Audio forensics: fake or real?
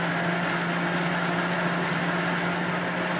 real